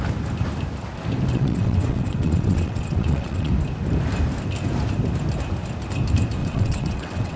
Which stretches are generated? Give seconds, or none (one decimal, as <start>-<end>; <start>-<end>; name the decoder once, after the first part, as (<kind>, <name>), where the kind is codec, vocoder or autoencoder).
1.3-3.5 (vocoder, WaveNeXt); 6.4-7.4